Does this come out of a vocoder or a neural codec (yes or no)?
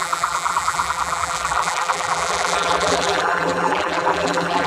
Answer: yes